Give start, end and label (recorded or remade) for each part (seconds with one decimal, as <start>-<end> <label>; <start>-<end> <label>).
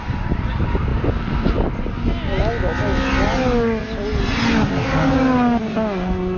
0.0-6.4 recorded